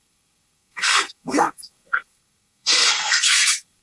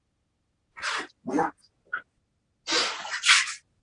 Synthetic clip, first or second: first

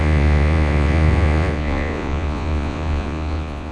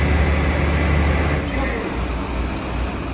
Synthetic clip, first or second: first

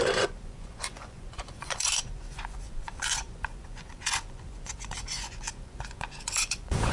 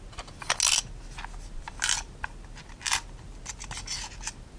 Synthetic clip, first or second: first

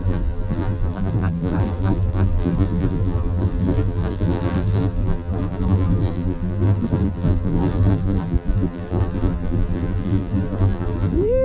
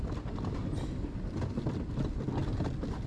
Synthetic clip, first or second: first